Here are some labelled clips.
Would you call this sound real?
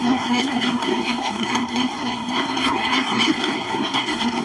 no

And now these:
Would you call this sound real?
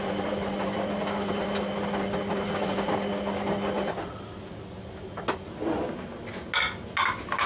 yes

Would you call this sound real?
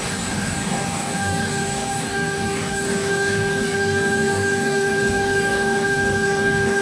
no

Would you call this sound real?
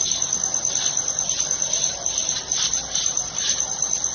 yes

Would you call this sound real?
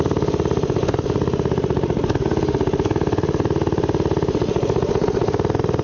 yes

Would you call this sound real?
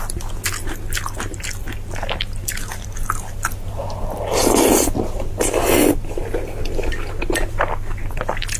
yes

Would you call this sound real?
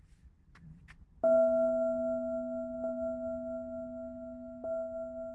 yes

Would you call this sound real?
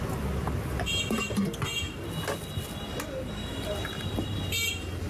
yes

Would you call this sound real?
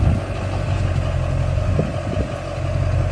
yes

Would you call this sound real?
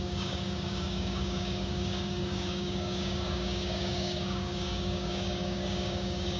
no